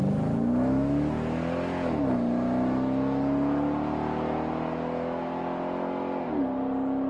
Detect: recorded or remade recorded